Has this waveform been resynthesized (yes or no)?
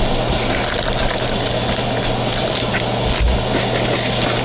no